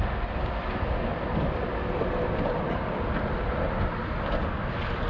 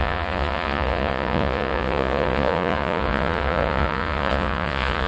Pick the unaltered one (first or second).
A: first